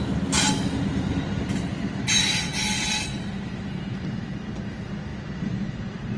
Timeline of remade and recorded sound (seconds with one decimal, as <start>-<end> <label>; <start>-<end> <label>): 0.0-6.2 recorded